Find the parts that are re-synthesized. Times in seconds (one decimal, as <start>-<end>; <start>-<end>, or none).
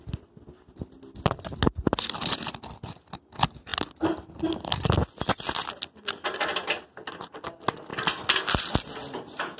none